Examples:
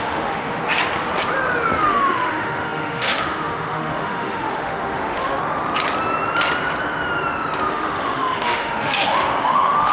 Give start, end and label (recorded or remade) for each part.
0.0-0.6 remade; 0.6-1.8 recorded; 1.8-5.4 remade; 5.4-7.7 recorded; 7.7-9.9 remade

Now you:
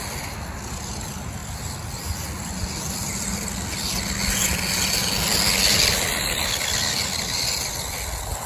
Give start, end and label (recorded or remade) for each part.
0.0-8.5 recorded

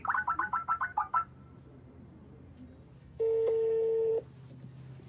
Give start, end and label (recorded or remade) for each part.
0.0-3.0 recorded; 3.0-4.1 remade; 4.1-5.1 recorded

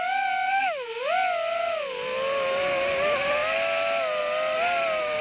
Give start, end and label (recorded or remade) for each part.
0.0-5.2 recorded

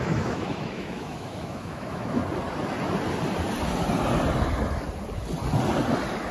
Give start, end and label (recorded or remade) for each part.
0.0-2.2 remade; 2.2-6.3 recorded

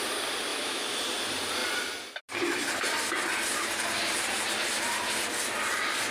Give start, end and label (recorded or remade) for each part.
0.0-0.5 recorded; 0.5-1.0 remade; 1.0-6.1 recorded

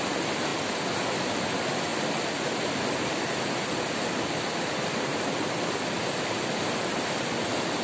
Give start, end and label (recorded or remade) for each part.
0.0-7.8 recorded

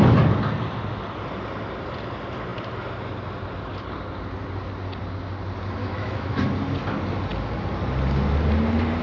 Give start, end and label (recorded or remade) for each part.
0.0-5.8 recorded; 5.8-6.4 remade; 6.4-9.0 recorded